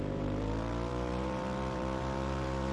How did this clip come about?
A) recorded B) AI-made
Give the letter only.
B